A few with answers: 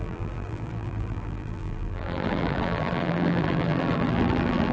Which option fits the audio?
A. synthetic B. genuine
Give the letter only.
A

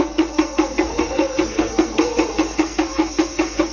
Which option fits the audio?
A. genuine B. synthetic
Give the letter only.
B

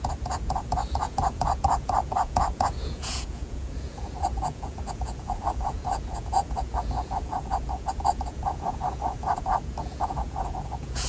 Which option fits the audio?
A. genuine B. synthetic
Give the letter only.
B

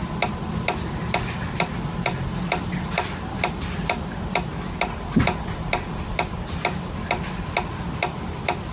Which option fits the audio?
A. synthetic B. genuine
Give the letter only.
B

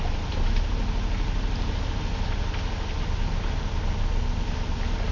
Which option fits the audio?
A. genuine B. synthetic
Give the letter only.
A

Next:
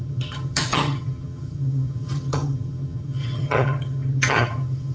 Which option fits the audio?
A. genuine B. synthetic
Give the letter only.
B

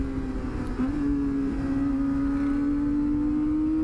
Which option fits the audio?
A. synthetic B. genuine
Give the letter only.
B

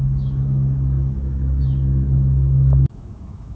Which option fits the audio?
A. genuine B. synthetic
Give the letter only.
B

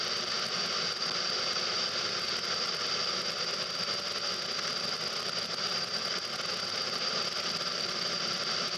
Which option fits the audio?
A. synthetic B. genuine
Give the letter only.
B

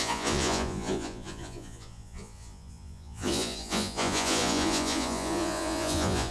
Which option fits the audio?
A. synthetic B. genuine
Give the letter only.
A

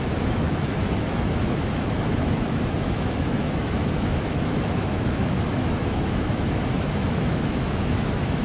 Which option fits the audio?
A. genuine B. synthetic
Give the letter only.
B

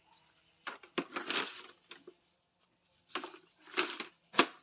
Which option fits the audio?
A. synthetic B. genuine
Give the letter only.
B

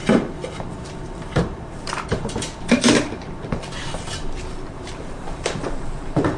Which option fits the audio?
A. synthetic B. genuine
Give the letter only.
A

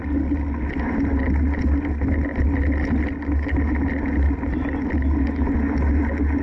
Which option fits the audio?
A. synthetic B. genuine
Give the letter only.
B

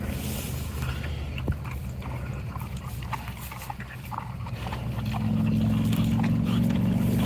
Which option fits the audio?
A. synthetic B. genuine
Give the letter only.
B